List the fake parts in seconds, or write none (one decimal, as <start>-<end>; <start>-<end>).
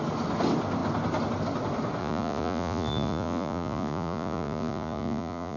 2.0-5.6